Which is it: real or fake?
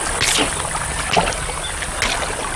real